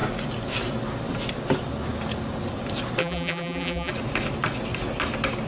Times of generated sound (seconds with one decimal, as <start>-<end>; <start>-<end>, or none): 3.0-3.9